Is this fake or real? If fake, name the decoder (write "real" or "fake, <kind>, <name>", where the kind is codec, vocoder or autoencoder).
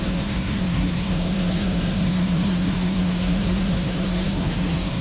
fake, codec, SNAC